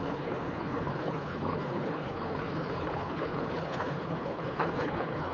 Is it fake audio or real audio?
fake